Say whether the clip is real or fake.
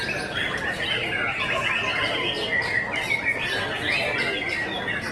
real